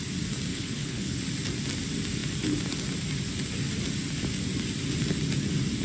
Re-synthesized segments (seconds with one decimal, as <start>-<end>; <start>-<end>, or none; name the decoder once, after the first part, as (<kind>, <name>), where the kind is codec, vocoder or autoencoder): 0.5-1.2 (codec, HILCodec)